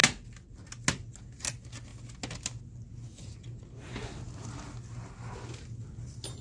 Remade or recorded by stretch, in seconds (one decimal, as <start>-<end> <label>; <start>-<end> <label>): 0.0-6.4 recorded